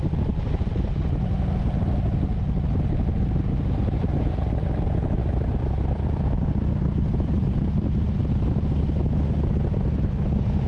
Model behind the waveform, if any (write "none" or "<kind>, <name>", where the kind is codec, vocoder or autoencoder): none